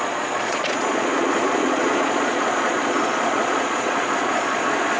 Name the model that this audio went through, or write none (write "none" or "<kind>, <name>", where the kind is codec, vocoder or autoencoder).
vocoder, Vocos